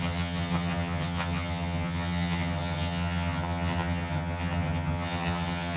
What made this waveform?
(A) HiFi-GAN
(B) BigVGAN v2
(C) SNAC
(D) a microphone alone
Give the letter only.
A